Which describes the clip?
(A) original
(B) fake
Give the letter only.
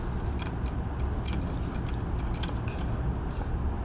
A